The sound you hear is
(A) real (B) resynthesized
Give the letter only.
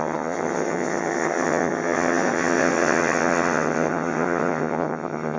B